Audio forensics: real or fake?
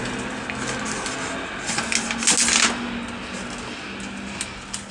real